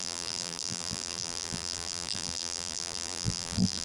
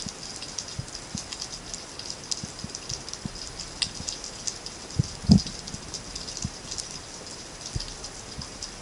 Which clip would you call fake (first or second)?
first